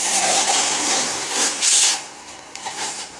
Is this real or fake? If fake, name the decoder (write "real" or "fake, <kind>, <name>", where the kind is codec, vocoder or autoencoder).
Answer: fake, codec, SNAC